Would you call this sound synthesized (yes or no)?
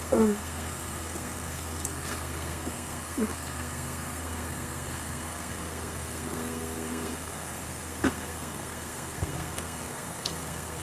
yes